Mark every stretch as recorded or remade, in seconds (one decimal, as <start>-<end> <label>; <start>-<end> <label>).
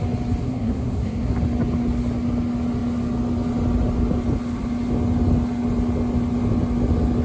0.0-0.4 recorded; 0.4-1.3 remade; 1.3-7.2 recorded